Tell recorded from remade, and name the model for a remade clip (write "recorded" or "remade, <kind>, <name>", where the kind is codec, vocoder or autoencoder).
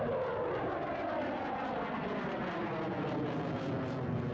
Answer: recorded